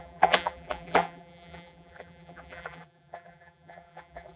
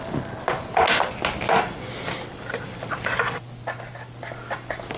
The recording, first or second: second